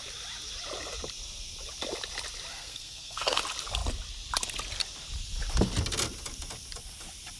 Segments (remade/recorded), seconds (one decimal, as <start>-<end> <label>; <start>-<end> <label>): 0.0-2.5 recorded; 2.5-3.4 remade; 3.4-7.4 recorded